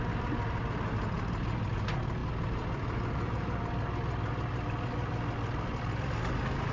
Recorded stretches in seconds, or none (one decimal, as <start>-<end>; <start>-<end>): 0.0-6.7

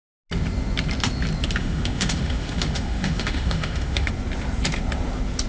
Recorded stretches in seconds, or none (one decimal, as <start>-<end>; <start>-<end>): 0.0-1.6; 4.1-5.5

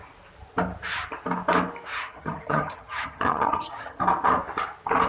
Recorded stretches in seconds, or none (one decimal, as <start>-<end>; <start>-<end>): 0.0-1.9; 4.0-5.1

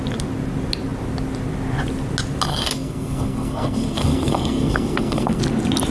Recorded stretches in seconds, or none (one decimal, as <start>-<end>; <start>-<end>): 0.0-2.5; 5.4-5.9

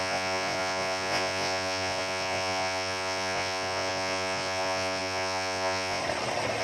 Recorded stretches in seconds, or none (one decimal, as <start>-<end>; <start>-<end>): 6.0-6.6

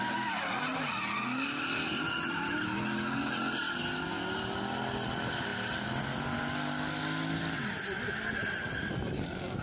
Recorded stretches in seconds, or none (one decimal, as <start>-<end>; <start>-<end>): 0.0-9.6

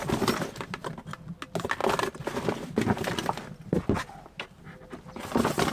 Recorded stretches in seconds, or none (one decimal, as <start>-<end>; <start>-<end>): 0.0-5.7

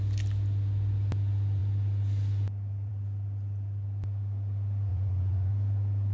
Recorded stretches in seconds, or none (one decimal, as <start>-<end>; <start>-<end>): 0.0-4.9; 5.5-6.1